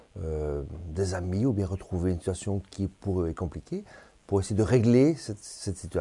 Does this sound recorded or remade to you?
recorded